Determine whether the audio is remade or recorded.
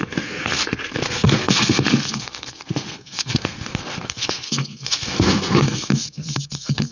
remade